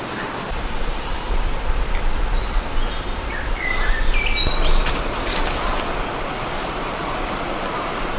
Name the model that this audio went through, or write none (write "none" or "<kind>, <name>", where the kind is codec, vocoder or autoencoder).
none